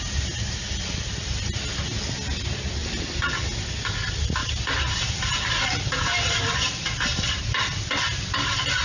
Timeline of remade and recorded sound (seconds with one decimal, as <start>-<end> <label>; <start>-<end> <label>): 0.0-4.4 recorded; 4.4-7.4 remade; 7.4-8.8 recorded